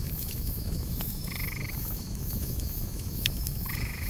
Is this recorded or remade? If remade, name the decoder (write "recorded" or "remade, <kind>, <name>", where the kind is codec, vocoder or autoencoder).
remade, autoencoder, DAC-VAE